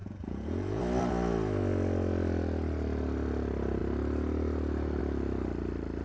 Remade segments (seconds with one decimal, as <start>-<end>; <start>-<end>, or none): 0.0-0.8